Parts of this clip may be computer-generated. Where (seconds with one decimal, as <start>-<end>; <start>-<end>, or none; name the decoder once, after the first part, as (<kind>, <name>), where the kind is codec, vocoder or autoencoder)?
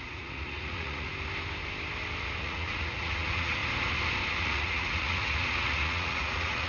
0.0-1.1 (vocoder, Vocos); 2.4-3.6; 4.3-6.7